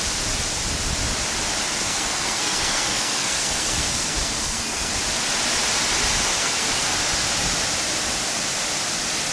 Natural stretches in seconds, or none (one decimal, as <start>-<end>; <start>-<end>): 0.0-1.6; 4.9-6.3; 6.9-9.3